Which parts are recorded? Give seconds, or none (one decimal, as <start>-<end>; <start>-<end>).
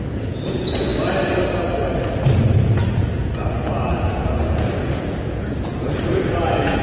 0.9-2.6; 3.4-3.9